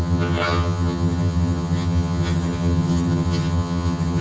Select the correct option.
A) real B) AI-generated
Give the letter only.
B